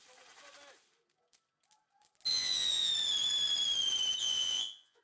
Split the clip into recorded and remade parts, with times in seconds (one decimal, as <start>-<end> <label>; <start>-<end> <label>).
0.0-2.3 recorded; 2.3-2.9 remade; 2.9-4.2 recorded; 4.2-5.0 remade